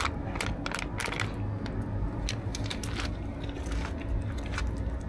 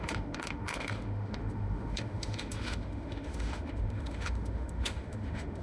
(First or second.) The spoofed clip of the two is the second